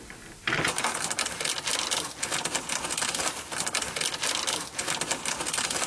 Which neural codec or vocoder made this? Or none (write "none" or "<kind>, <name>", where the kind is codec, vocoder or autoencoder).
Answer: none